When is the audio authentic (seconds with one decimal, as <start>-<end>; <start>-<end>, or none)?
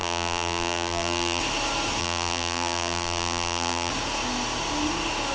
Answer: 1.4-2.0; 3.9-5.3